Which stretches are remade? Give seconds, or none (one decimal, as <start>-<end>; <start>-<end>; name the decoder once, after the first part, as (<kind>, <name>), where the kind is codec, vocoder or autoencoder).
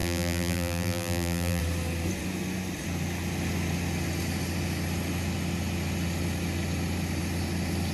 0.0-1.6 (vocoder, BigVGAN v2)